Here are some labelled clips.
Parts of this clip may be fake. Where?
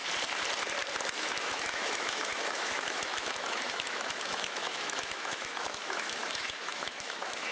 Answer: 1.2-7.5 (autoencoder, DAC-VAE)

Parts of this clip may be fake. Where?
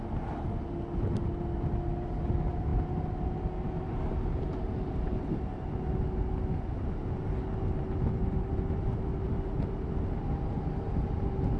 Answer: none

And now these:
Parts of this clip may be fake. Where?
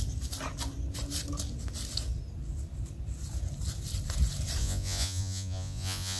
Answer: 4.6-6.2 (vocoder, Vocos)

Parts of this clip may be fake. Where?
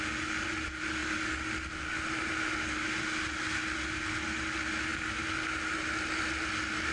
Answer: none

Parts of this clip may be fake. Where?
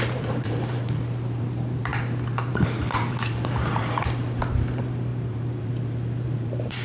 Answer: 0.0-1.9 (vocoder, BigVGAN v2); 2.5-6.8